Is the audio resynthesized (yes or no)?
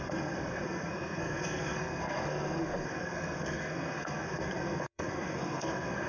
yes